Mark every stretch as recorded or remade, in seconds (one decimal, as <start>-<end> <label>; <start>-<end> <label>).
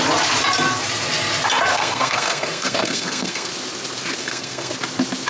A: 0.0-1.7 recorded; 1.7-3.5 remade; 3.5-4.2 recorded; 4.2-4.7 remade; 4.7-5.3 recorded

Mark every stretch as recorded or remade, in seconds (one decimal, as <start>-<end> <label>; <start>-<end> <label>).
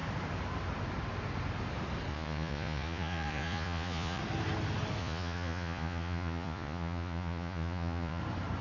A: 0.0-2.1 recorded; 2.1-4.2 remade; 4.2-5.0 recorded; 5.0-8.2 remade; 8.2-8.6 recorded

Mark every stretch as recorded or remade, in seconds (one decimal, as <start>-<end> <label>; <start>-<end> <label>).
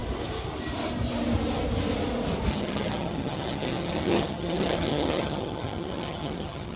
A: 0.0-2.5 recorded; 2.5-6.8 remade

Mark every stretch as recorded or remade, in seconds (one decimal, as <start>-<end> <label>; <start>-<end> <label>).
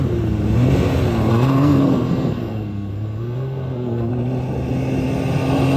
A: 0.0-1.3 recorded; 1.3-4.1 remade; 4.1-5.8 recorded